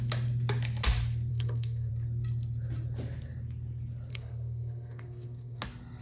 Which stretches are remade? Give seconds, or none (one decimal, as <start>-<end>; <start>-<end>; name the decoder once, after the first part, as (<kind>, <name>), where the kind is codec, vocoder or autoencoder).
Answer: 1.3-1.9 (codec, SNAC); 4.1-5.6